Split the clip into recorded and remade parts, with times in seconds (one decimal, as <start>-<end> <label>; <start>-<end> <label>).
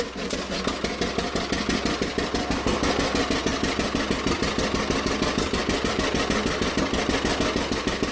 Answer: 0.0-8.1 recorded